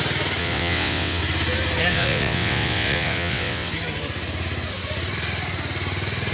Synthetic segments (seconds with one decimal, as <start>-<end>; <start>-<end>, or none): 0.4-1.2; 1.9-3.7